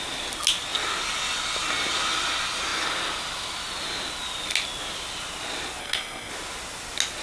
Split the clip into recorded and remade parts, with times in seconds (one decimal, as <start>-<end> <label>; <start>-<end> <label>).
0.0-5.8 recorded; 5.8-6.3 remade; 6.3-7.2 recorded